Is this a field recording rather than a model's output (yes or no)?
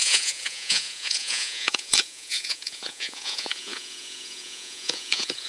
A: no